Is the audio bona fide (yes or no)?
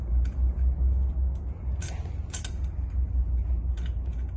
yes